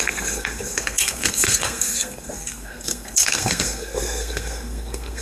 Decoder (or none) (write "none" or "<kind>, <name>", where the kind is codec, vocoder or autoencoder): codec, SNAC